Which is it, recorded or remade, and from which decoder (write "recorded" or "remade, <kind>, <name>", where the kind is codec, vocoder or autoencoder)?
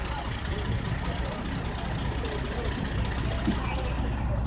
recorded